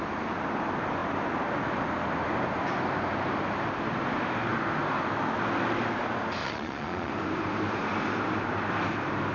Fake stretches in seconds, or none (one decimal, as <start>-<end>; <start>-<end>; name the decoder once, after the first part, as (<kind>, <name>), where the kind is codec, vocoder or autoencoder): 6.4-7.1 (vocoder, Vocos)